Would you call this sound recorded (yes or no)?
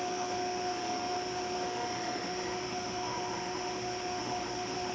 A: no